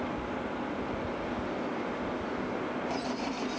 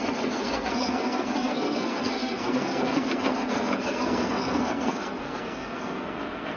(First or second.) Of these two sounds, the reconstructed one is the second